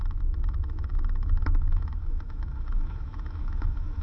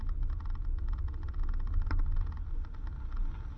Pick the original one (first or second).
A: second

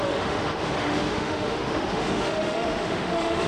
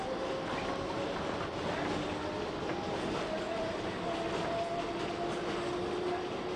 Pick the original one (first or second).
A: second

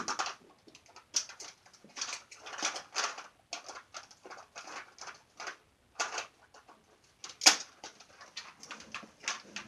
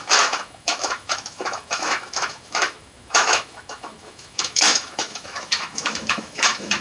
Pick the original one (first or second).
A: first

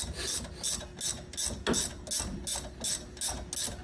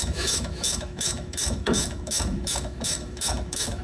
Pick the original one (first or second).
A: first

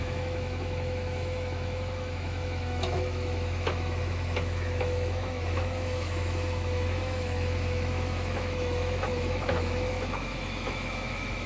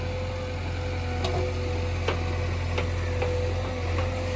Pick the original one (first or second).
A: second